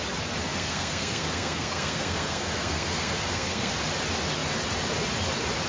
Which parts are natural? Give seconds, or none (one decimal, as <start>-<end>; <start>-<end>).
0.0-0.5; 3.7-5.7